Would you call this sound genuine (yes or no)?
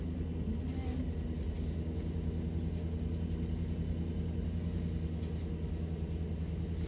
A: yes